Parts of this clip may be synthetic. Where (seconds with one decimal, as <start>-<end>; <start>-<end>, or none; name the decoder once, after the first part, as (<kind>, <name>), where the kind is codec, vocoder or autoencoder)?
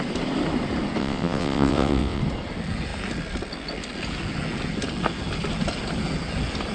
1.0-2.2 (vocoder, WaveNeXt)